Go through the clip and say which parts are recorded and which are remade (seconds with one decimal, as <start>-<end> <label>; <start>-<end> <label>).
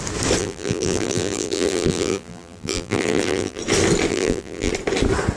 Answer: 0.0-0.4 recorded; 0.4-3.6 remade; 3.6-4.1 recorded; 4.1-4.7 remade; 4.7-5.4 recorded